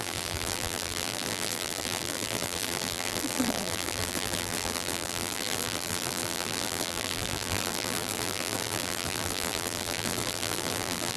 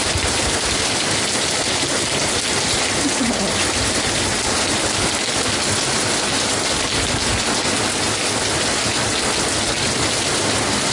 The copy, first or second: first